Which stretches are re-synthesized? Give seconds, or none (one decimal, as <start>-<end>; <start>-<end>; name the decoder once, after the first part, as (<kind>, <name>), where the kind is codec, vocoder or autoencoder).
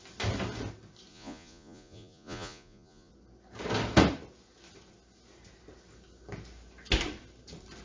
1.1-3.1 (vocoder, Vocos)